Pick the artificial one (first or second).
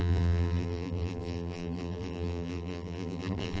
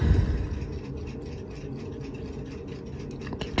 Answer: first